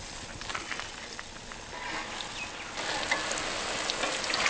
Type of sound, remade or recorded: recorded